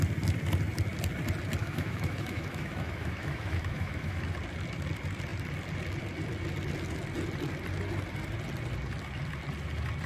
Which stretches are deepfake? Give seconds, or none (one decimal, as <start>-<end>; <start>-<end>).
1.6-4.2